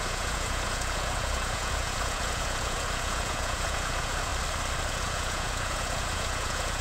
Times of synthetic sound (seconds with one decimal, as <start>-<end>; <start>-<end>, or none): 0.0-4.3; 4.9-6.8